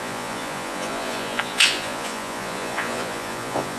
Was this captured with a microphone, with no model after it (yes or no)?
no